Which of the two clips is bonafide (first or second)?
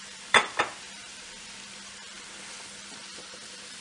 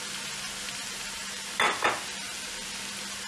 second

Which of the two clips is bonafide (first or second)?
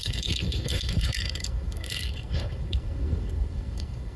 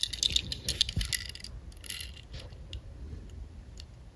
second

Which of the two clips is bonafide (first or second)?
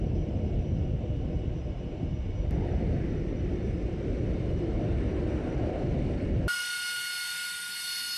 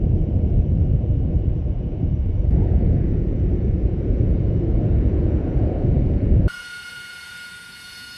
first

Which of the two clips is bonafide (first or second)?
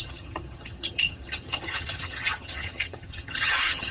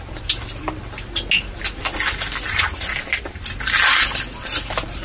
second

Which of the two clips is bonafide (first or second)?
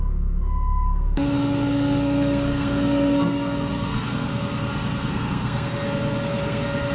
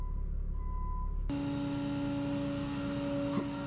second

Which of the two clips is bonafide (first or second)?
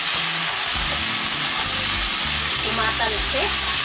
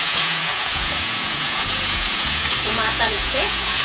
first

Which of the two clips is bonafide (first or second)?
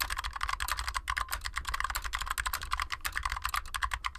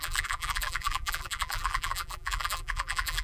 first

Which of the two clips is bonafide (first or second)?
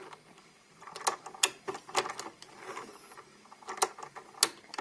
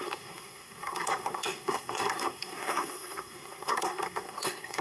first